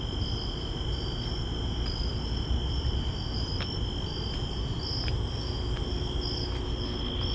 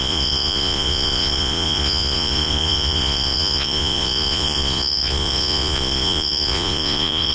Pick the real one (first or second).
first